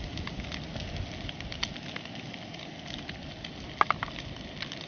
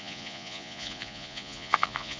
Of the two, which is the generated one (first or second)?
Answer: second